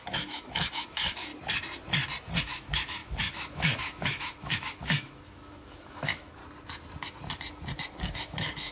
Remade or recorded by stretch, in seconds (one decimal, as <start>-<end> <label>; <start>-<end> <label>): 0.0-1.3 remade; 1.3-2.4 recorded; 2.4-6.4 remade; 6.4-8.0 recorded; 8.0-8.7 remade